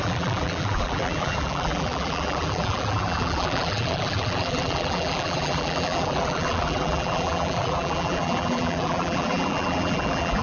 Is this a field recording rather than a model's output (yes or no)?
no